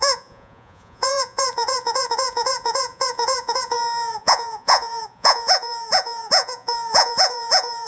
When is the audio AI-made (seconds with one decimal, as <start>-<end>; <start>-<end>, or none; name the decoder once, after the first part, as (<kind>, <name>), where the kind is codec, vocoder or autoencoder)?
0.0-7.9 (vocoder, Vocos)